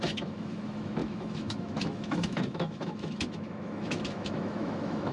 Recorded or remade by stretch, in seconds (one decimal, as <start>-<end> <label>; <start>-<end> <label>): 0.0-5.1 remade